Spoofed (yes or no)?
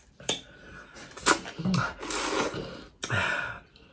no